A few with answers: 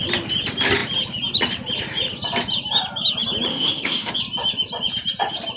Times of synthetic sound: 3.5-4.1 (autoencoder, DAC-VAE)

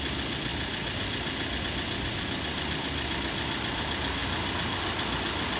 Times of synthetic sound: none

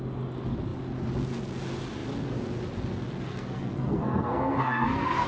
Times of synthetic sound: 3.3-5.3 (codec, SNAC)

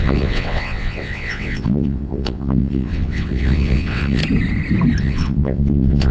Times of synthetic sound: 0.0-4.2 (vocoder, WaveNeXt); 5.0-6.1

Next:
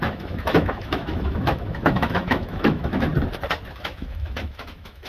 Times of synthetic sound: 0.0-3.1 (autoencoder, DAC-VAE); 3.7-5.1

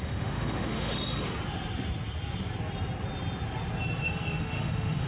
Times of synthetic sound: 0.0-0.9 (autoencoder, DAC-VAE); 4.0-5.1

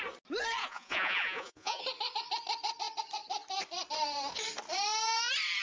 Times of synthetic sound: 0.6-1.8 (vocoder, Vocos)

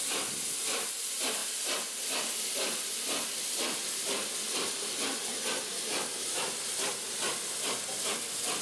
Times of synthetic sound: none